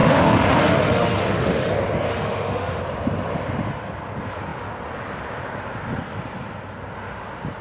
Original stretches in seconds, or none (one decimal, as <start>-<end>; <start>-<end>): 1.7-2.1; 2.8-7.6